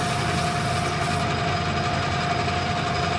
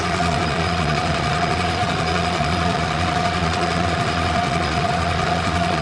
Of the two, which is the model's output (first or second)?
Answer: second